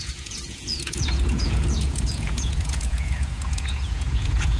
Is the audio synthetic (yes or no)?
yes